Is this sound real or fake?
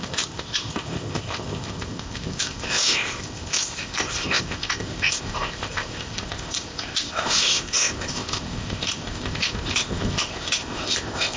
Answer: fake